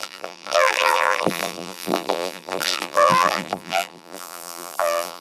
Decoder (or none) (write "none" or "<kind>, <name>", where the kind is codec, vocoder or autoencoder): vocoder, BigVGAN v2